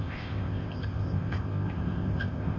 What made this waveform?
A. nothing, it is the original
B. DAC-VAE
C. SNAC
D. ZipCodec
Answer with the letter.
D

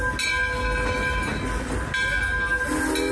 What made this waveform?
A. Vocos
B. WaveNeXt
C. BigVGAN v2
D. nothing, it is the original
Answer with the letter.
D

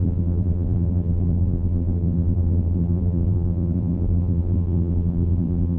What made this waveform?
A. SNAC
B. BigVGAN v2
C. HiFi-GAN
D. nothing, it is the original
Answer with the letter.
B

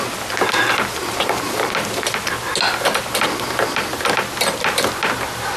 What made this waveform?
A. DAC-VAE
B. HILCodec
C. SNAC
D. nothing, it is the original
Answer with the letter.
D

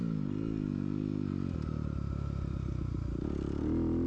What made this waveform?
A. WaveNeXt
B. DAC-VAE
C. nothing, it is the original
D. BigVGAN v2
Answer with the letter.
C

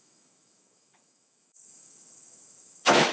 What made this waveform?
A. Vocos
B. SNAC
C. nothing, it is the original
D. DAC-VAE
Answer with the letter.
D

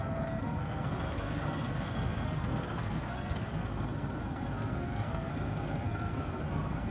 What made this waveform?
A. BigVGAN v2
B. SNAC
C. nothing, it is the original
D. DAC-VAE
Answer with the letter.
B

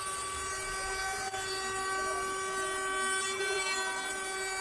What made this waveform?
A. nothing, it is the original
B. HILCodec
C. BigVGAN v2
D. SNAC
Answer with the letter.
A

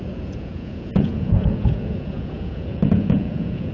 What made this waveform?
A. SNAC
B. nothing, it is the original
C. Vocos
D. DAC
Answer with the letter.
C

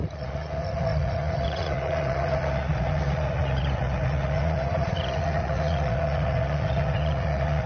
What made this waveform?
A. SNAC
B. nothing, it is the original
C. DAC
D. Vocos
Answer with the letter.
D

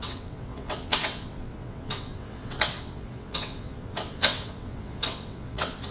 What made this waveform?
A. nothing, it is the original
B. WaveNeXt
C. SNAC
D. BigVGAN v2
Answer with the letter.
B